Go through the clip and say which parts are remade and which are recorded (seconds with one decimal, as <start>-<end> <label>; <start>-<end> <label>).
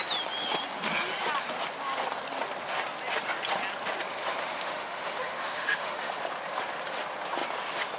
0.0-4.4 recorded; 4.4-6.2 remade; 6.2-8.0 recorded